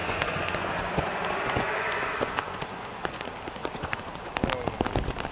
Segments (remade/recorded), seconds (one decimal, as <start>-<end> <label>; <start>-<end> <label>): 0.0-3.2 remade; 3.2-3.6 recorded; 3.6-4.3 remade; 4.3-5.3 recorded